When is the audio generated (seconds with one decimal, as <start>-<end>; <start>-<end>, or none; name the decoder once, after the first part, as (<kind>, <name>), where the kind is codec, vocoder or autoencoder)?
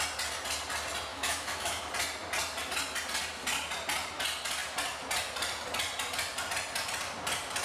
1.1-1.8 (autoencoder, DAC-VAE)